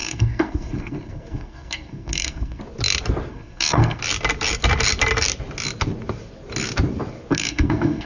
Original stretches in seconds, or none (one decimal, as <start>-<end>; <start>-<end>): 2.6-3.3; 4.0-7.3